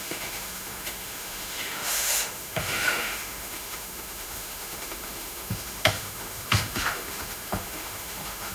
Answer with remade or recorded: remade